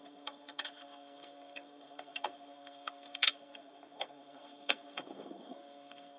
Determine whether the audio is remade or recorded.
remade